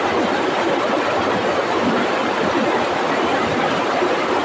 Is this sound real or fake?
real